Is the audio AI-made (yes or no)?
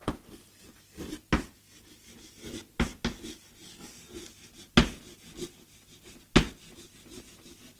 no